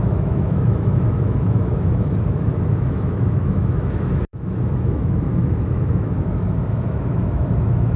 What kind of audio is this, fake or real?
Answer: fake